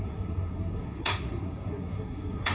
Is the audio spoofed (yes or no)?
yes